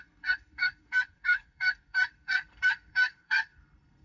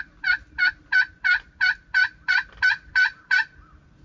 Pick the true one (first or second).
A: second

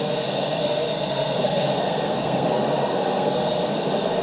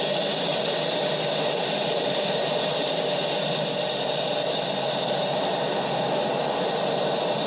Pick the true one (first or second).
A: second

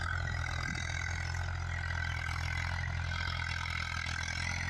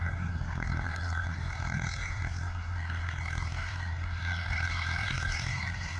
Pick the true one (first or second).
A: first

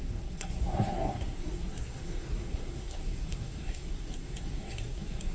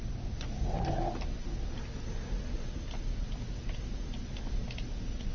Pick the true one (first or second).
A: second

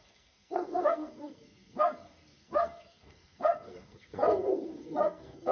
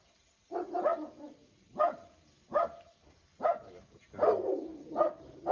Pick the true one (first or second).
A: second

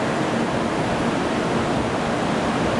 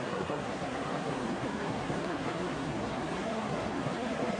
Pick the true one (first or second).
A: first